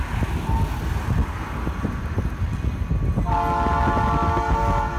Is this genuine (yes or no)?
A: yes